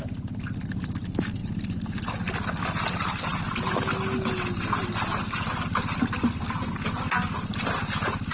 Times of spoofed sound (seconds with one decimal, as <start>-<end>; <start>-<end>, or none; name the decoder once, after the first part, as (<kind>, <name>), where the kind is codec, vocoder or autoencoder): none